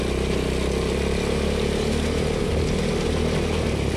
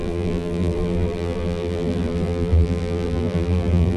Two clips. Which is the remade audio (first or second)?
second